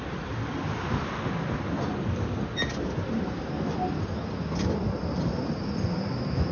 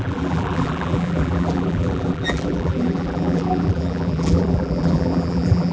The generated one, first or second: second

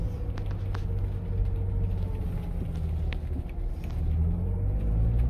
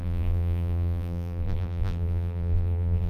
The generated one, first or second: second